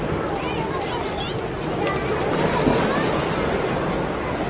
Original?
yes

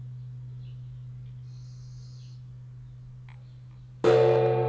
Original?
yes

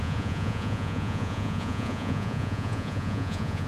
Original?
no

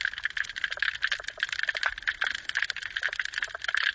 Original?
yes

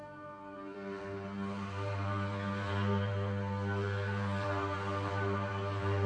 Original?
no